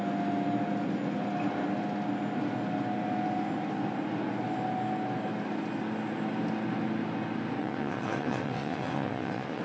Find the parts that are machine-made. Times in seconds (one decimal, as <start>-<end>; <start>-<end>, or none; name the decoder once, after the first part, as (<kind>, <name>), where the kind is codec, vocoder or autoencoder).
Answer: 7.6-9.6 (vocoder, WaveNeXt)